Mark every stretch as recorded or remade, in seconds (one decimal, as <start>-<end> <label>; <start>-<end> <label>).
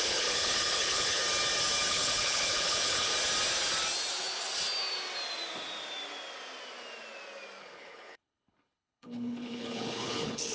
0.0-1.2 remade; 1.2-1.9 recorded; 1.9-3.1 remade; 3.1-7.6 recorded; 7.6-10.5 remade